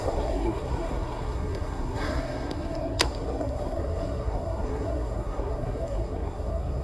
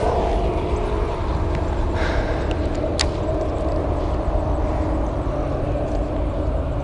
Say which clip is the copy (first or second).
first